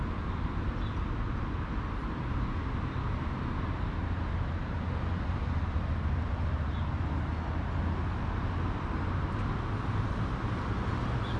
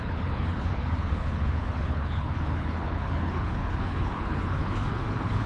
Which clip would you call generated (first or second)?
second